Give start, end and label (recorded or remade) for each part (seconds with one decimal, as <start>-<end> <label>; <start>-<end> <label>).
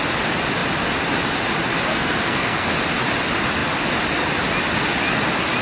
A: 0.0-1.9 recorded; 1.9-2.7 remade; 2.7-5.6 recorded